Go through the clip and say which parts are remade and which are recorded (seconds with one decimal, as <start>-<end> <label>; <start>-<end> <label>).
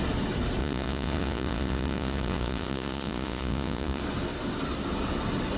0.0-0.6 recorded; 0.6-4.0 remade; 4.0-5.6 recorded